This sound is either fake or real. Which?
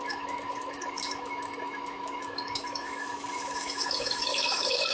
fake